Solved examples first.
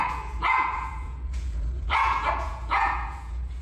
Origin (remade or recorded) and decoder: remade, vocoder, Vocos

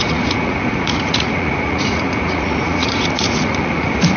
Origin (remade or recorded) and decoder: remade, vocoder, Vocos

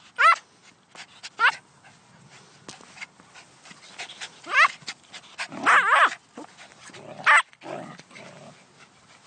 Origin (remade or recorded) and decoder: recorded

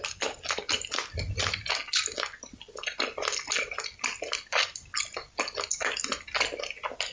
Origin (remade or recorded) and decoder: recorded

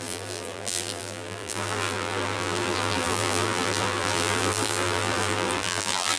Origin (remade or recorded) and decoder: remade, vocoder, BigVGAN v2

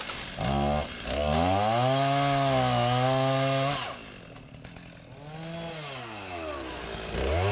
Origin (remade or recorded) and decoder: recorded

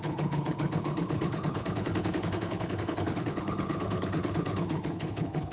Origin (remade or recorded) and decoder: remade, codec, HILCodec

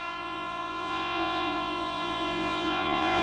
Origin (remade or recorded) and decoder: remade, vocoder, Vocos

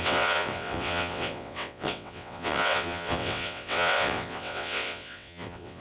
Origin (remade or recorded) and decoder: remade, vocoder, WaveNeXt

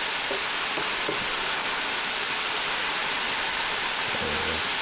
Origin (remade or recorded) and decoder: recorded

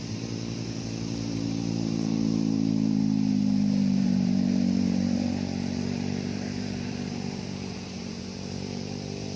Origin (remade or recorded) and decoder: remade, vocoder, BigVGAN v2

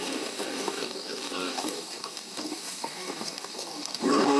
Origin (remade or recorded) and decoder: remade, codec, DAC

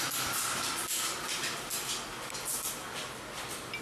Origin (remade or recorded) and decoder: recorded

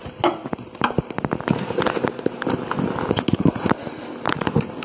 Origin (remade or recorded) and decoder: recorded